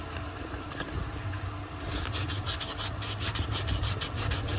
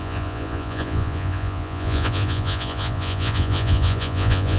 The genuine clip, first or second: first